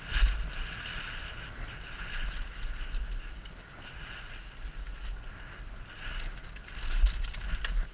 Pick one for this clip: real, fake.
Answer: real